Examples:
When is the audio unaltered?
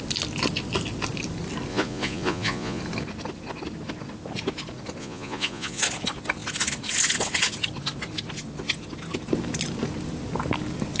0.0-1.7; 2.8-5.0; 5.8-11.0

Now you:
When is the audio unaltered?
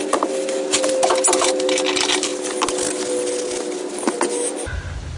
0.0-5.2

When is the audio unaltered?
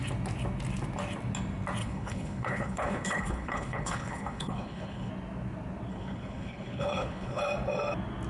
0.0-1.8; 5.1-5.9; 7.4-8.3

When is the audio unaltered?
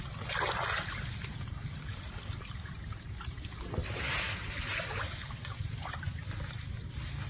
none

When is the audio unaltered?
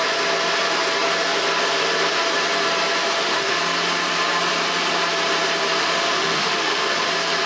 0.0-3.0; 3.6-5.8; 7.1-7.5